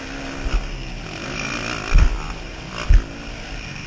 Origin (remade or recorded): recorded